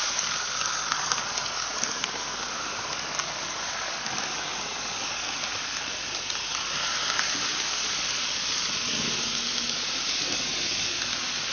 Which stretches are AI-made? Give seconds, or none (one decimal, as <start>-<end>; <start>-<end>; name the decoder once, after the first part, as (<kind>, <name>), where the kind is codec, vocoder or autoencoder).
0.0-11.5 (codec, DAC)